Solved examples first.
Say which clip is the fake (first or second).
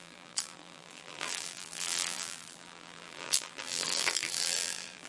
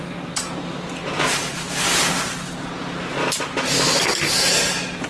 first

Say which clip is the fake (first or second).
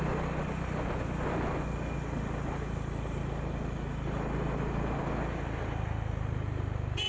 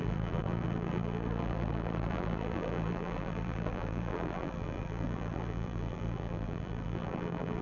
second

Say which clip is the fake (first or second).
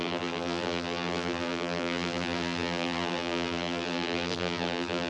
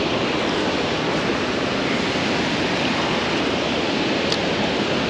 first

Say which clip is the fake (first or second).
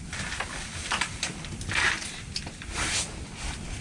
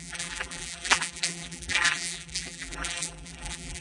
second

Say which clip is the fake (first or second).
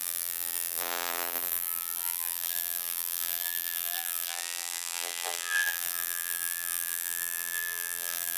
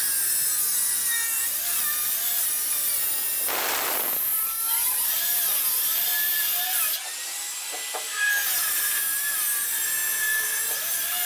first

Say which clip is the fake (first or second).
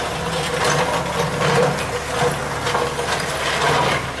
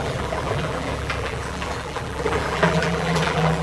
second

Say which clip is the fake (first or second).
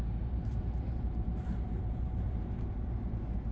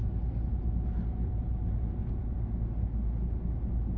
first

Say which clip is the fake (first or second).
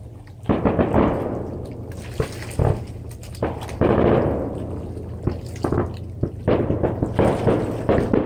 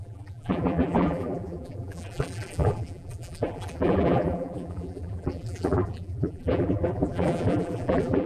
second